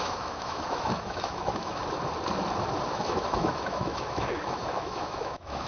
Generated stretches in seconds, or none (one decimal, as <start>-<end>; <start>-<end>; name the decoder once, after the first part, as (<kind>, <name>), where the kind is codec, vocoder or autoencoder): 0.0-1.8 (autoencoder, DAC-VAE); 2.9-5.7